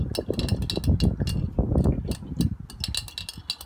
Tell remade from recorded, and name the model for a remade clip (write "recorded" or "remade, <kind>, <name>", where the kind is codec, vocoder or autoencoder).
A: recorded